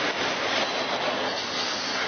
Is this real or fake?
real